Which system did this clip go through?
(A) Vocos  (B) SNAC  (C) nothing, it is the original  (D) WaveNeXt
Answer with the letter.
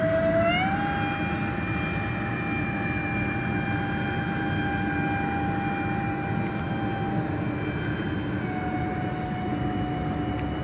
C